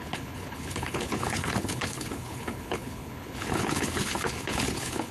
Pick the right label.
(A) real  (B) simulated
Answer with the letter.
B